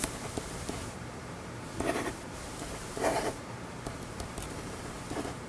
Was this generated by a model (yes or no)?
yes